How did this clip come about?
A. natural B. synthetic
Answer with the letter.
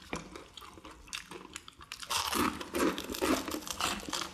A